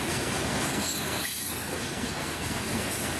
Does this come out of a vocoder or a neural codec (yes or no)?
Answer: yes